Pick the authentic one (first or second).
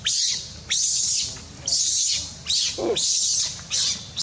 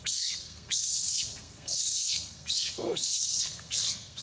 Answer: first